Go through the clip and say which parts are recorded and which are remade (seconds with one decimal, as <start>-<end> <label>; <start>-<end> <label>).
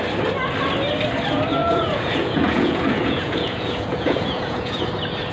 0.0-1.6 recorded; 1.6-4.8 remade; 4.8-5.3 recorded